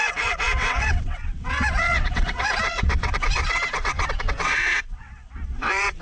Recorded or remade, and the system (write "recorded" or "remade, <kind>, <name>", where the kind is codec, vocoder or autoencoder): remade, vocoder, WaveNeXt